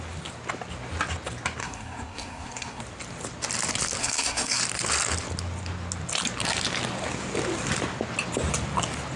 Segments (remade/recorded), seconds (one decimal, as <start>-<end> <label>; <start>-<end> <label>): 0.0-1.6 recorded; 1.6-2.8 remade; 2.8-4.0 recorded; 4.0-4.6 remade; 4.6-9.2 recorded